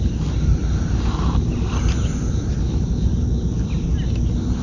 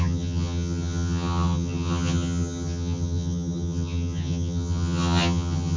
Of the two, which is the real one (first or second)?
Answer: first